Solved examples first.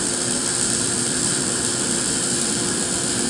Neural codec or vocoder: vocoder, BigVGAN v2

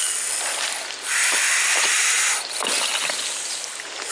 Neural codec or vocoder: none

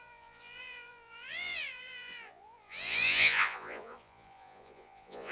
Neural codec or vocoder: vocoder, Vocos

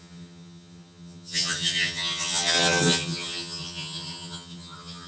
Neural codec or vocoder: vocoder, HiFi-GAN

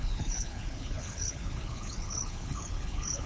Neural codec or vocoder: codec, HILCodec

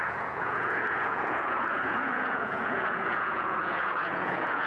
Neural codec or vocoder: vocoder, Vocos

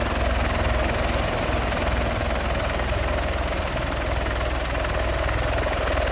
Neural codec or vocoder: none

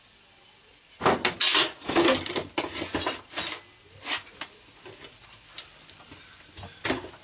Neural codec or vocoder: none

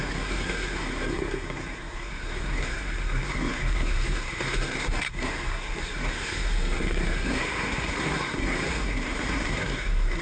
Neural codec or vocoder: codec, SNAC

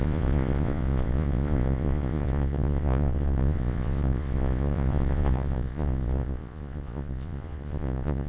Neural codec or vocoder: vocoder, Vocos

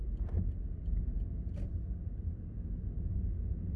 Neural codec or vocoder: none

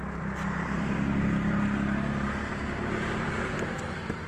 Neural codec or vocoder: vocoder, BigVGAN v2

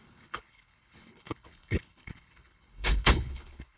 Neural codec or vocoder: codec, HILCodec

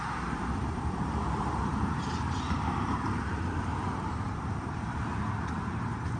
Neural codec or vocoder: vocoder, BigVGAN v2